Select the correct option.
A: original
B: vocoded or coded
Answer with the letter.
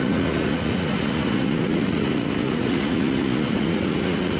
B